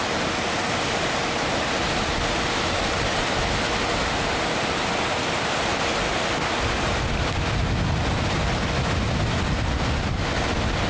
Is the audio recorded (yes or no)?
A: yes